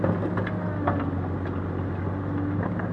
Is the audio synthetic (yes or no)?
no